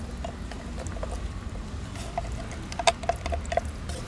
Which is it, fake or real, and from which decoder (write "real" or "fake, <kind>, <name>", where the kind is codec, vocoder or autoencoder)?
real